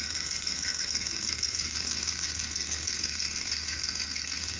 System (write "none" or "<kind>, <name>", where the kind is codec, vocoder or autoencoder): codec, SNAC